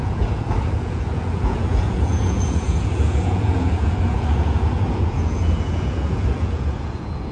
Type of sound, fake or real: fake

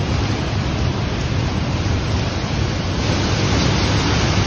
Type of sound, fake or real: real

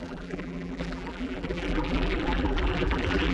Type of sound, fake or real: fake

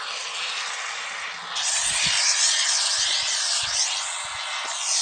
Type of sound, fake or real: real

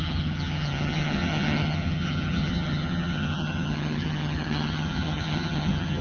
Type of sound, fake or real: fake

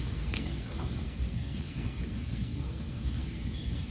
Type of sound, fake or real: fake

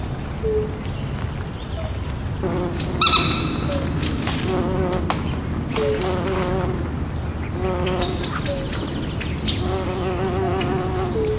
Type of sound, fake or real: real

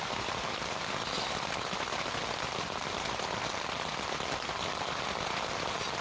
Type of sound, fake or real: real